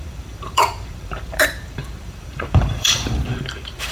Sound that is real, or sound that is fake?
fake